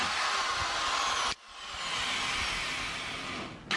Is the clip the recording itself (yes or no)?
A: yes